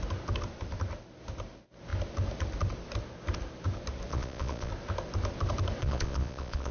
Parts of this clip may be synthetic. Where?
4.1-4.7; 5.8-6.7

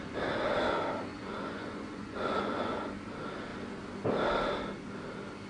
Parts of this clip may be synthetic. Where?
1.1-2.9

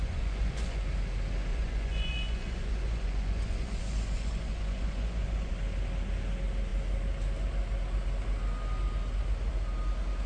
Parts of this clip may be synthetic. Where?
0.0-0.9; 1.5-5.5

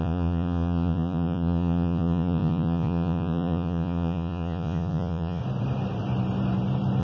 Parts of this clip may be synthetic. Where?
0.0-5.4

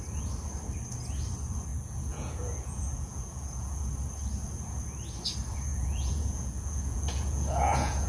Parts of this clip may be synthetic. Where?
1.7-4.1; 5.7-8.1